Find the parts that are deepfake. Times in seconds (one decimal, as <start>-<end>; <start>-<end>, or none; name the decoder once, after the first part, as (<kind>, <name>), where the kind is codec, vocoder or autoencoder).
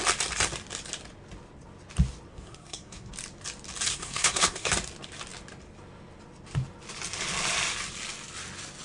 2.3-3.1 (codec, SNAC); 3.9-4.7